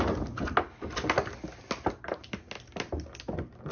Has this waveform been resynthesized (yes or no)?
no